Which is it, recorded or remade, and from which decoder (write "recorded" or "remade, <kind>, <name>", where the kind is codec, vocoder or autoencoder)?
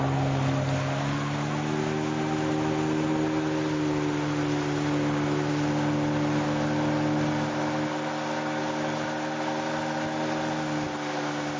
recorded